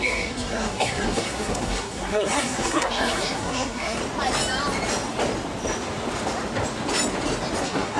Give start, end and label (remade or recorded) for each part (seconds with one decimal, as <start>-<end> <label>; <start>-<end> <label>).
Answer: 0.0-4.0 remade; 4.0-7.6 recorded; 7.6-8.0 remade